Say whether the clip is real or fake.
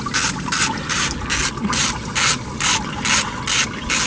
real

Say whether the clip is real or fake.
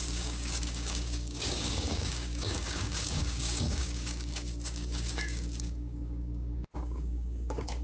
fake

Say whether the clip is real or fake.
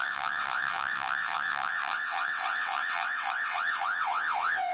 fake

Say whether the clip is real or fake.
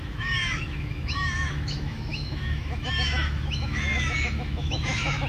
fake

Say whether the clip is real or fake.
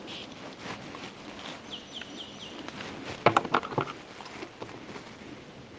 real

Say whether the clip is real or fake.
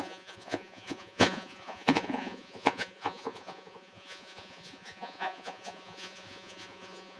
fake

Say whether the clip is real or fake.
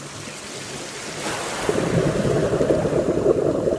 real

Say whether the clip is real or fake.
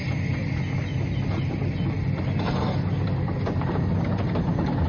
real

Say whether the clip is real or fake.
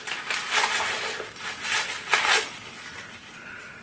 real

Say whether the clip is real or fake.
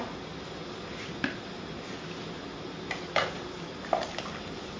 real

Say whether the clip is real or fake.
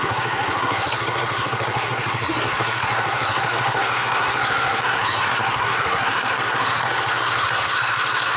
fake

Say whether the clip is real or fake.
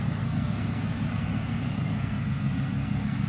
fake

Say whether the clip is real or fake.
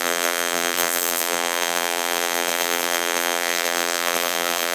fake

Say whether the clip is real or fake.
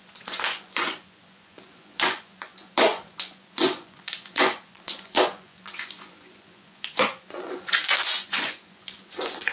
fake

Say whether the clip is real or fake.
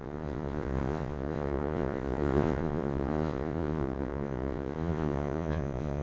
fake